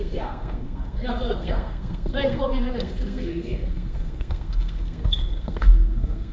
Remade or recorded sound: remade